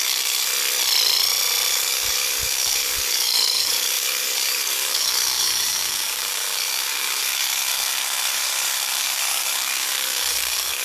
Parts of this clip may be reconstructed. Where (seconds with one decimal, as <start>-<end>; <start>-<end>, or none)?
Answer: 0.0-0.5; 1.7-10.8